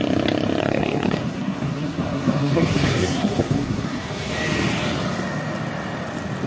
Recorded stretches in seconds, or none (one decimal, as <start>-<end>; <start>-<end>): 0.0-0.6; 4.3-6.5